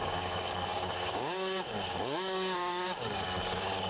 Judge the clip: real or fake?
fake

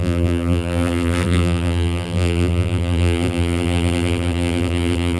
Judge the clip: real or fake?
fake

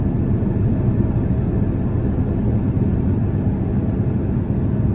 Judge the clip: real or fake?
real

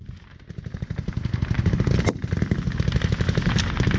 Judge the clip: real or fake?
real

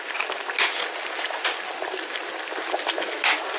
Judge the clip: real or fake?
real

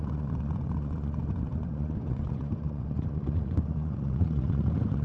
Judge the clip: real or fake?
fake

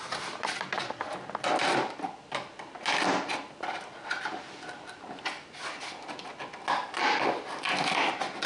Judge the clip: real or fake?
real